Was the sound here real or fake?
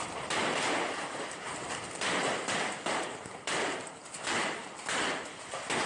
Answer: real